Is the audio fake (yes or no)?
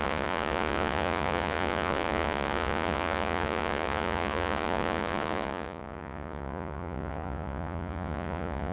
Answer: yes